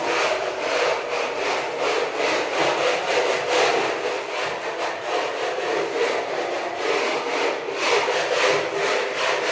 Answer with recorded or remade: recorded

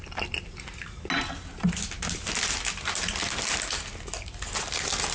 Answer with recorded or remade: recorded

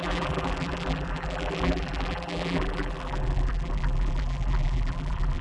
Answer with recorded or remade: remade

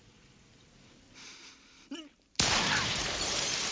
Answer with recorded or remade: recorded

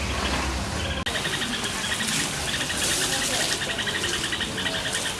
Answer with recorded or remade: recorded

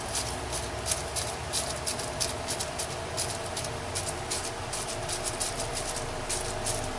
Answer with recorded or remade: remade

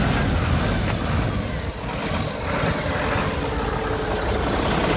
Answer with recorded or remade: recorded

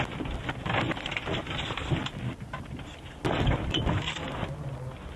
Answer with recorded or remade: recorded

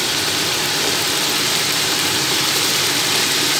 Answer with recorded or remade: remade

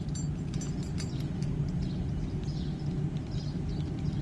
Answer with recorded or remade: recorded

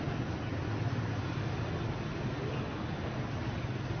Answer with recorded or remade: recorded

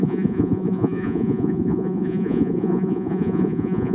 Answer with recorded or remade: remade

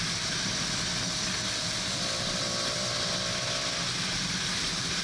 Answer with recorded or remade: remade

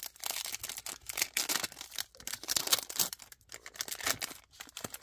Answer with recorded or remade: recorded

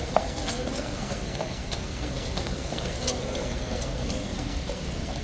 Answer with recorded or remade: remade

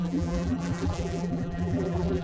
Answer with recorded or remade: remade